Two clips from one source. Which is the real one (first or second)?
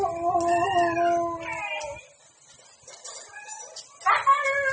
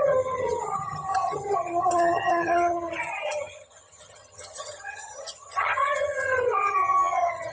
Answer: first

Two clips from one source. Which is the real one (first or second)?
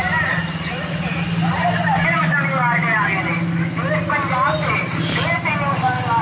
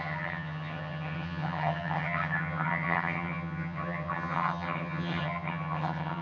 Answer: first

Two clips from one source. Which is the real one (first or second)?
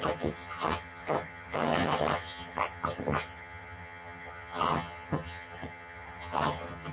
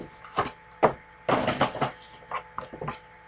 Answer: second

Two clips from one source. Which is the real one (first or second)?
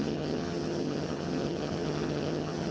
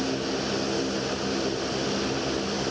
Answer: second